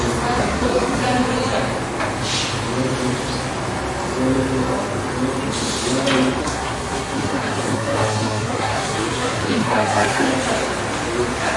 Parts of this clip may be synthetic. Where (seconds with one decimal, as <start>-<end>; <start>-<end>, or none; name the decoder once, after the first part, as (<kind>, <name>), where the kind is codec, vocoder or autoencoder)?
0.4-1.0 (codec, SNAC); 6.4-10.3